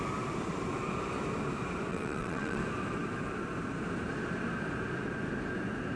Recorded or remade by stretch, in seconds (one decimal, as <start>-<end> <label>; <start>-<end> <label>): 0.0-1.9 recorded; 1.9-2.6 remade; 2.6-6.0 recorded